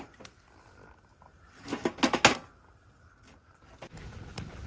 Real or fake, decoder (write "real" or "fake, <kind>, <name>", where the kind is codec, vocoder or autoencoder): real